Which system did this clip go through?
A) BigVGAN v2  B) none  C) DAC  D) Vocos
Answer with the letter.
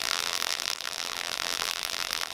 A